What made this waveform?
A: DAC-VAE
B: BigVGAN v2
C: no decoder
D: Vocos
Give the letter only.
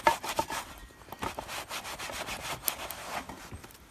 C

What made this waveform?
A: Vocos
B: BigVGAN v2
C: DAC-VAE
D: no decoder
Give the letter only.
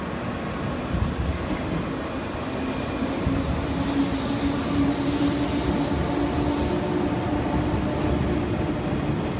D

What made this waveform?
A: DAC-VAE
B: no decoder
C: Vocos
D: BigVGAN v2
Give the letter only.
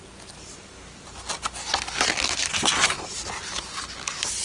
B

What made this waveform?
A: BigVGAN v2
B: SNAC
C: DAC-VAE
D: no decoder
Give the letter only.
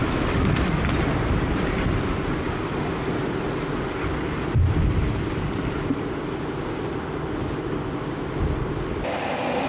D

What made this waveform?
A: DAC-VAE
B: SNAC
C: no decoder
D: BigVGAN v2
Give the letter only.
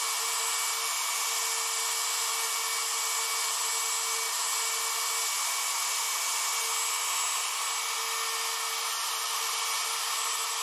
C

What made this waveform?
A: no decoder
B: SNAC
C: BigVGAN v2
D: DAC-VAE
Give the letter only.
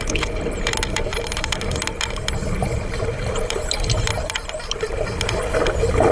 A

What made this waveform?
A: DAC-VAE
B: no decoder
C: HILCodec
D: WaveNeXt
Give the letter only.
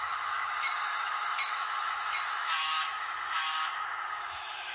A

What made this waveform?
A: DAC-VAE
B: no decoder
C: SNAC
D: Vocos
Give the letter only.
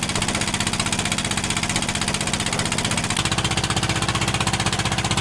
B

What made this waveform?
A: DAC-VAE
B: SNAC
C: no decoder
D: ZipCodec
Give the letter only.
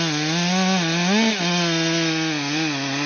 C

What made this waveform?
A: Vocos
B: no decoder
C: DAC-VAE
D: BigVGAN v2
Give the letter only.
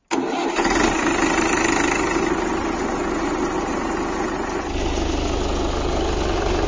B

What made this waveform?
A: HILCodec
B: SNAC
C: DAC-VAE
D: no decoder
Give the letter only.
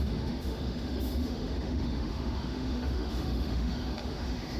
C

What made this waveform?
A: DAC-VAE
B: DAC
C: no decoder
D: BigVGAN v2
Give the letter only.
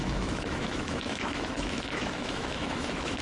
A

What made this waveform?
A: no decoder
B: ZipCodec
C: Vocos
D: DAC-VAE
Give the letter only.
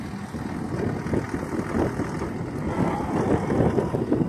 A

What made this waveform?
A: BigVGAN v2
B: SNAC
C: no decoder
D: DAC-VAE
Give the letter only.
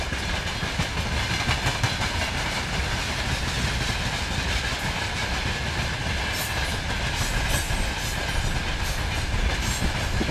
C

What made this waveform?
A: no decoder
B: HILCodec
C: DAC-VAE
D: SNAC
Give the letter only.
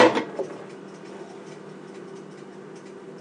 A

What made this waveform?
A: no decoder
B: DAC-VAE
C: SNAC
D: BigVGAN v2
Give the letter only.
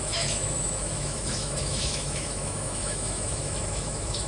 B